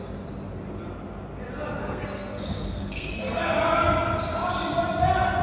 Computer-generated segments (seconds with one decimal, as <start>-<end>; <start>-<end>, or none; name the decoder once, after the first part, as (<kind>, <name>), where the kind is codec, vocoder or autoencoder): 1.8-3.4 (codec, SNAC)